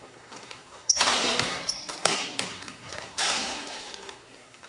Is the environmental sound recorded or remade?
remade